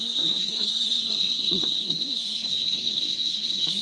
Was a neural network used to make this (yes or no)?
yes